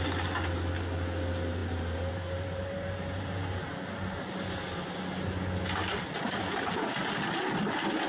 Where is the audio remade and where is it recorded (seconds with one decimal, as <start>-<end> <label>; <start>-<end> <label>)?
0.0-1.6 recorded; 1.6-3.4 remade; 3.4-8.1 recorded